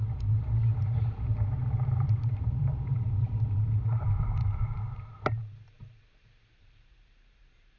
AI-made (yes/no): yes